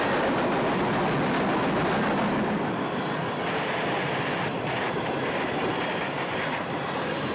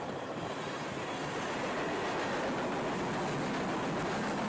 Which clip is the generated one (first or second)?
first